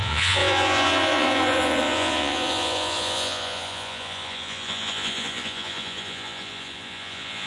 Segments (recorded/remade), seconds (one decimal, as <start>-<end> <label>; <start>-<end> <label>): 0.0-7.5 remade